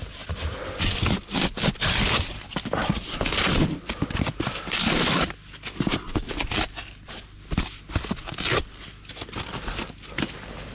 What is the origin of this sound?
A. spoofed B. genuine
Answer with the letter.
B